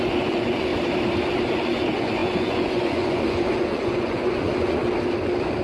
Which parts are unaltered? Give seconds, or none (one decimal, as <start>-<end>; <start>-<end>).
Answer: 0.7-1.5; 4.8-5.6